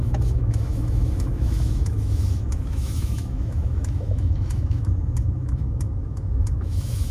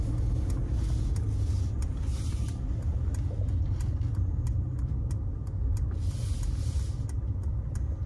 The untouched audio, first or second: second